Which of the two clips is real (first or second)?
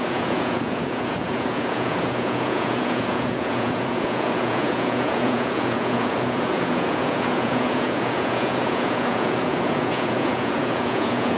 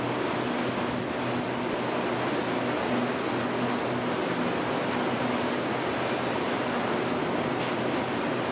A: second